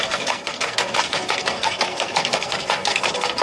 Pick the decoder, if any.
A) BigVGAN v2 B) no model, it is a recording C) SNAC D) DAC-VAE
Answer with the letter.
C